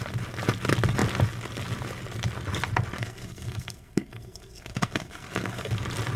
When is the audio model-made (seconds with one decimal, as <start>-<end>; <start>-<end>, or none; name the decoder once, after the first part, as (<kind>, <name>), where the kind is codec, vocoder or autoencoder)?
3.0-5.7 (codec, SNAC)